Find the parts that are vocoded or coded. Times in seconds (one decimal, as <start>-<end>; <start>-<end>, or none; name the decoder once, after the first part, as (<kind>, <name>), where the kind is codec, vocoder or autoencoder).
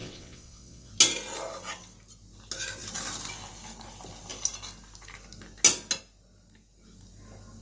0.0-0.9 (vocoder, WaveNeXt)